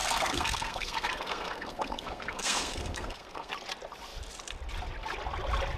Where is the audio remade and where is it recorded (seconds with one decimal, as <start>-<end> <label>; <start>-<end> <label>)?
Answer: 0.0-3.5 remade; 3.5-5.8 recorded